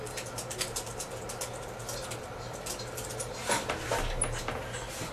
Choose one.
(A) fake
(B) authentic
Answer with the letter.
B